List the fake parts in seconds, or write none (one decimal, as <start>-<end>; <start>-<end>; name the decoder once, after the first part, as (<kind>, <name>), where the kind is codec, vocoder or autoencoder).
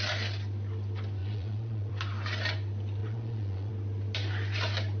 1.2-1.9 (vocoder, Vocos); 3.0-3.7